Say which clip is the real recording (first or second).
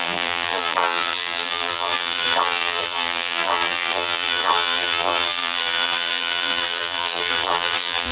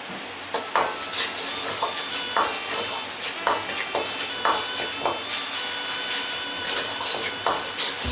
second